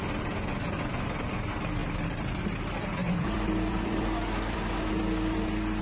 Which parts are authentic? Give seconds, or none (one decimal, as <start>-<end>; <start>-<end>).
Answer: 0.0-1.8; 2.4-3.0; 4.9-5.8